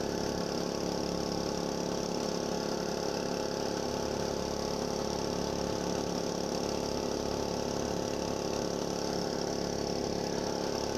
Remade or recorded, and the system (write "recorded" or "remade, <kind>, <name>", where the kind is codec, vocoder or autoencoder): recorded